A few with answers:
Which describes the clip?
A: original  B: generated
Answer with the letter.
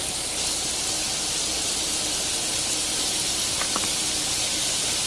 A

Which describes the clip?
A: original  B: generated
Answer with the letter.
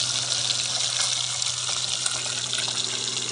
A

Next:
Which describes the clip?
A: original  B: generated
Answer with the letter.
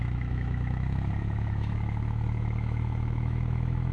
B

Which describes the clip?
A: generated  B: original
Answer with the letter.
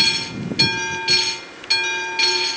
B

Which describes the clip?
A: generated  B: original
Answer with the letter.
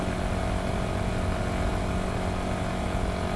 B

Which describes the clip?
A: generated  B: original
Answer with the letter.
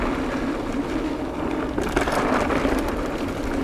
B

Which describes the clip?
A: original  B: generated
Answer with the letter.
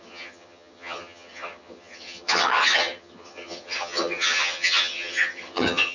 B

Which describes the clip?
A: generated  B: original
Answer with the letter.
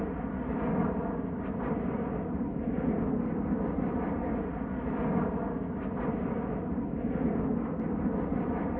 B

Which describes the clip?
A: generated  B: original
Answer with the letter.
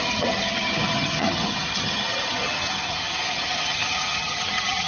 A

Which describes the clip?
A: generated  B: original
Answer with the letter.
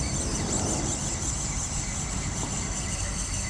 B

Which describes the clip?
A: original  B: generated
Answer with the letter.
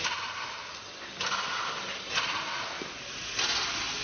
A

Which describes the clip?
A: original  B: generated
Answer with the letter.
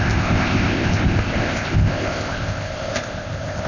B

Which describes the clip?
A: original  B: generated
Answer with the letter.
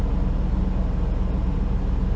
A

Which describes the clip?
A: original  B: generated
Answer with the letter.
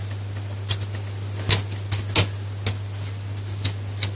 A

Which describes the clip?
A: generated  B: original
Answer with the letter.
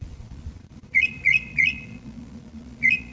A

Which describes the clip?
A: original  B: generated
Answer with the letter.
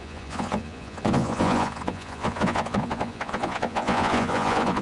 B